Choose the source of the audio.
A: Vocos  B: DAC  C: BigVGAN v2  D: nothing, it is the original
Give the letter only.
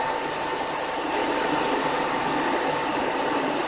D